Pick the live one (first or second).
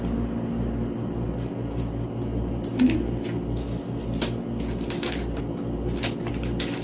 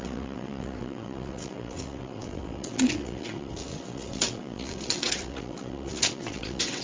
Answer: first